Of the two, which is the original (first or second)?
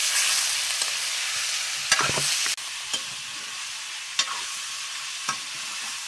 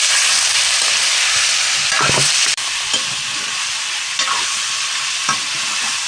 first